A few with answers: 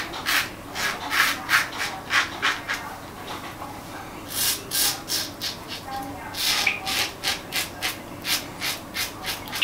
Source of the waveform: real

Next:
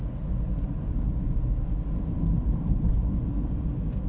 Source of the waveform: real